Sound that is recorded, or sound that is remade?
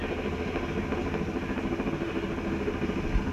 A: recorded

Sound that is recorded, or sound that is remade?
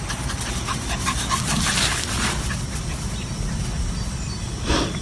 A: recorded